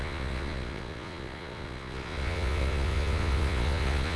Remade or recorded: remade